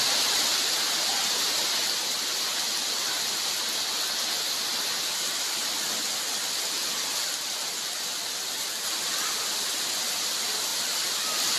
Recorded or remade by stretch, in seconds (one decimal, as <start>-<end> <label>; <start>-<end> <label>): 0.0-11.6 recorded